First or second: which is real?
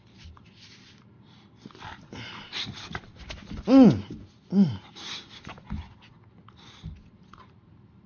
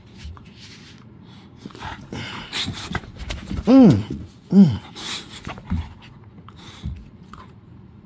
first